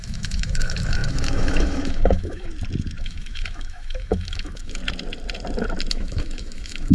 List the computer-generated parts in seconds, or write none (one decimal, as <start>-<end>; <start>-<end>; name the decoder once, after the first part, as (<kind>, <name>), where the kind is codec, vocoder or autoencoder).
0.0-2.5 (autoencoder, DAC-VAE); 3.0-4.8; 5.9-6.9